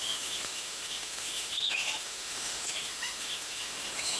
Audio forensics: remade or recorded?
remade